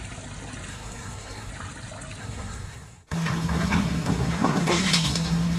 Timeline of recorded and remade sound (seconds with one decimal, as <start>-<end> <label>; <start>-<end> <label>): 0.0-0.7 recorded; 0.7-1.5 remade; 1.5-2.2 recorded; 2.2-5.6 remade